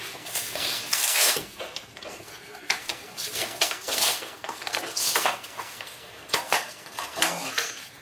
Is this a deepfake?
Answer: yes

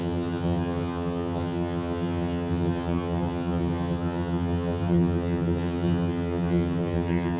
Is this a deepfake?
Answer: yes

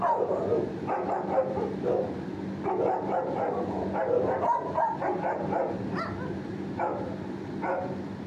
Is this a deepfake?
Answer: no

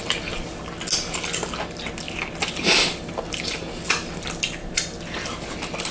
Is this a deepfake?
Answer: no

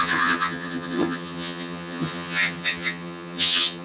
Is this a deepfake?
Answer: yes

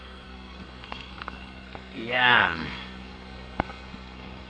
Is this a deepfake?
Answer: yes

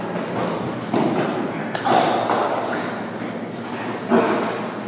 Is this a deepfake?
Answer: no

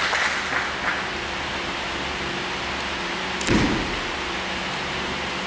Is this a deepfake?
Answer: no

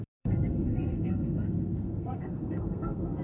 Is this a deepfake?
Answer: yes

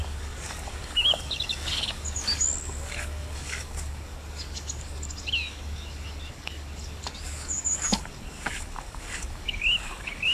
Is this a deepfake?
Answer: yes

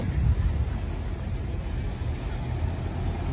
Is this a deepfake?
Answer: no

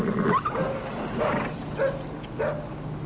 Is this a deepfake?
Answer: no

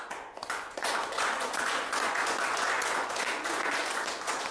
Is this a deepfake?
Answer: yes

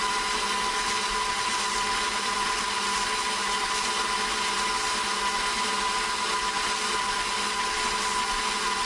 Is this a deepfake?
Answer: no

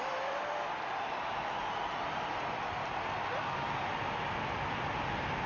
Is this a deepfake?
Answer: no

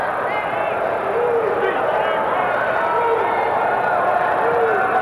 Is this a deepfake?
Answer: no